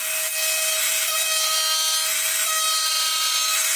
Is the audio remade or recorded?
recorded